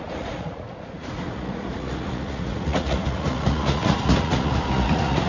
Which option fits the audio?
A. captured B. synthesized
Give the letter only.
B